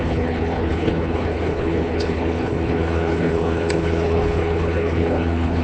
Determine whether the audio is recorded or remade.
remade